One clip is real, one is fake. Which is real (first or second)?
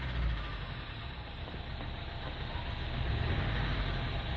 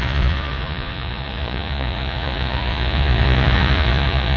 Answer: first